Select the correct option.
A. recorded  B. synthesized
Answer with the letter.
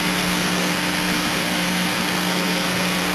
B